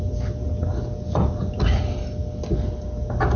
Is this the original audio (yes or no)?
yes